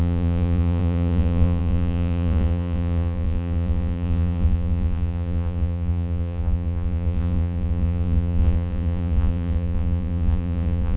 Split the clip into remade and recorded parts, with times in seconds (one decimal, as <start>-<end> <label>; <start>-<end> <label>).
0.0-11.0 remade